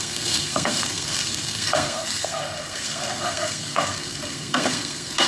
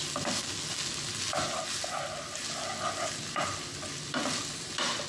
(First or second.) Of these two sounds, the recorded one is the second